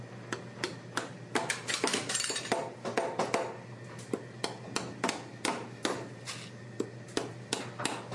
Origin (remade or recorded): recorded